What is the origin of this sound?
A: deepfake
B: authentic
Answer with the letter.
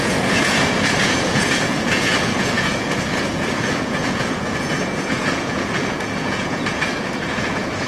A